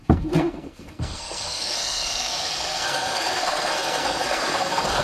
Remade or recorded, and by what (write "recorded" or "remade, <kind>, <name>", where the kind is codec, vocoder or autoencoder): remade, codec, SNAC